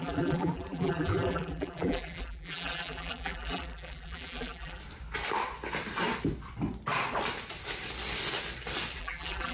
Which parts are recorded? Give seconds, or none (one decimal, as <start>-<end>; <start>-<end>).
4.8-9.0